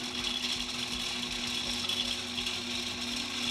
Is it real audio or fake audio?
real